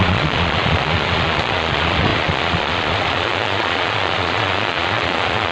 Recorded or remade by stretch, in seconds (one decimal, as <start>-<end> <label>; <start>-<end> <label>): 0.0-5.5 remade